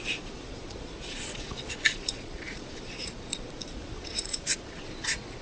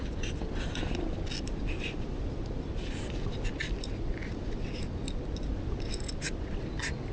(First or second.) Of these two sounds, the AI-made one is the first